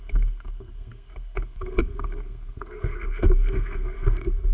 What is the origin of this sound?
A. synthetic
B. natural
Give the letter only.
A